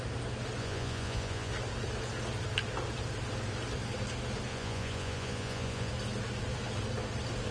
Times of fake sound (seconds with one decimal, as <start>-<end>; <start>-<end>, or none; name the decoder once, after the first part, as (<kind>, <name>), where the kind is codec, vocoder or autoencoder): 0.6-1.5 (vocoder, Vocos); 4.5-5.9